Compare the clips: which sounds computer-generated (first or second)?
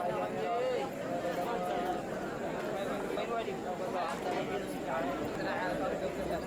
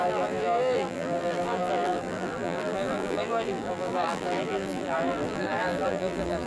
second